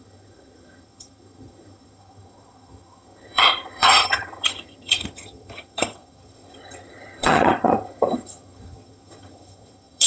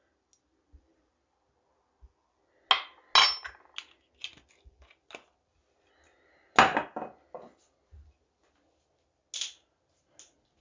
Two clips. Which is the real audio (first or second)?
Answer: second